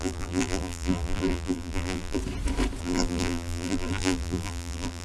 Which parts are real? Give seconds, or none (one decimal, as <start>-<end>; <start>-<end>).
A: 2.2-2.8